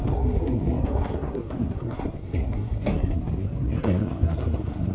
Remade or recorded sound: remade